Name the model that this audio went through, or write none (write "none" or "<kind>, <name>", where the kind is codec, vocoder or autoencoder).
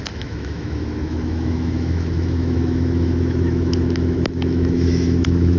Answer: autoencoder, DAC-VAE